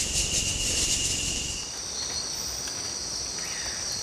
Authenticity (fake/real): real